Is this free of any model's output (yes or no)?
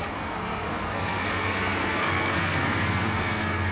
no